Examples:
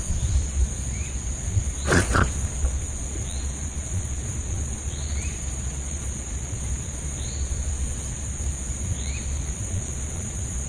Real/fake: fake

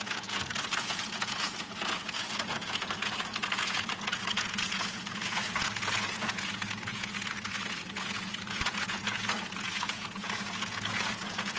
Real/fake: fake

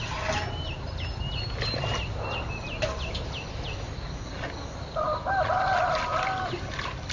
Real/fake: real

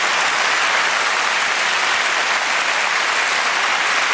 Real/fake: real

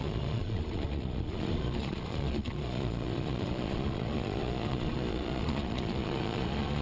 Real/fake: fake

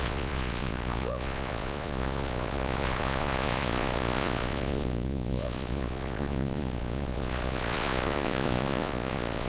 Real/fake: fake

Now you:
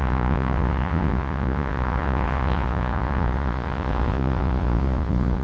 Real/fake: fake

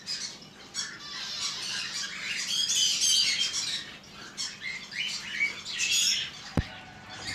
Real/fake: real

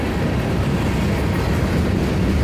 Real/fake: real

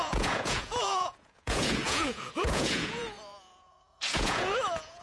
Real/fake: fake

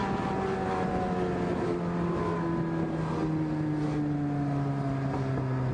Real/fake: real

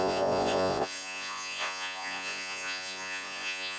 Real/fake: fake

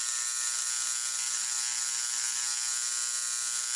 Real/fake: real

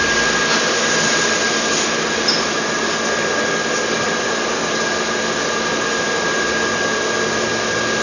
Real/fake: real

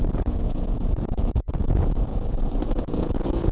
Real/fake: fake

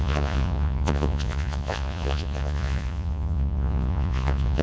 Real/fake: fake